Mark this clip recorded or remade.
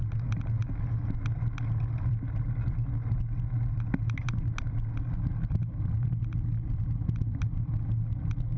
recorded